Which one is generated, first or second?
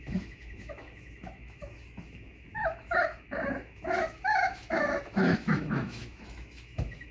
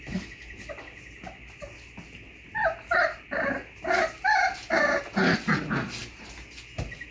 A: first